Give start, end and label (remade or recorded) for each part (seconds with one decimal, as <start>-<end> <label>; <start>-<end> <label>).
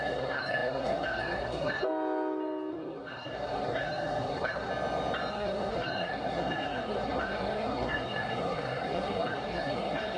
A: 0.0-1.8 remade; 1.8-2.7 recorded; 2.7-4.7 remade; 4.7-5.3 recorded; 5.3-10.2 remade